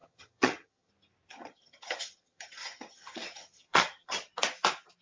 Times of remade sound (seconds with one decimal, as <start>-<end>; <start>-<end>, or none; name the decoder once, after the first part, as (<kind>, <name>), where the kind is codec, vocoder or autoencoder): 0.0-0.9 (vocoder, HiFi-GAN); 1.3-4.3